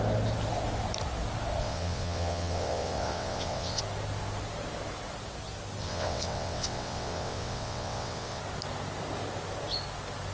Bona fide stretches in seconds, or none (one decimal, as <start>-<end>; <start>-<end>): 0.0-1.6; 3.8-5.8; 8.4-10.3